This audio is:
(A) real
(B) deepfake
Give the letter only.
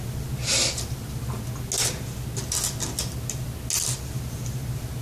A